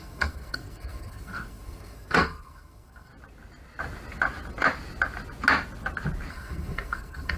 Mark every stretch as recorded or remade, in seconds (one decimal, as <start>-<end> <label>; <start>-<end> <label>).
0.0-3.1 remade; 3.1-6.3 recorded; 6.3-7.4 remade